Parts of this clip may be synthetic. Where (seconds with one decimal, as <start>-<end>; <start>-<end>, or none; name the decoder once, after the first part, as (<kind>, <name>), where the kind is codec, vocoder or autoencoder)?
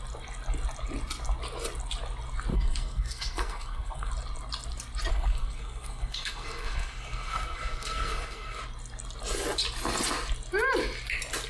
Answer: 2.5-4.1 (codec, SNAC); 5.1-8.6